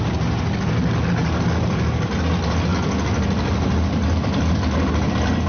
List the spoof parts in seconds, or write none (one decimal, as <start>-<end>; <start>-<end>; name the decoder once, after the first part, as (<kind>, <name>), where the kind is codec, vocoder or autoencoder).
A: none